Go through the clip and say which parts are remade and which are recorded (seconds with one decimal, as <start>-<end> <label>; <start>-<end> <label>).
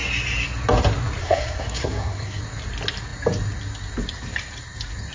0.0-1.2 recorded; 1.2-2.4 remade; 2.4-5.1 recorded